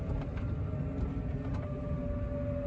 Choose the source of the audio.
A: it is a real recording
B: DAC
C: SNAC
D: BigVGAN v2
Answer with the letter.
A